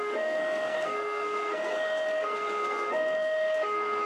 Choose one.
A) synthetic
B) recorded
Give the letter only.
A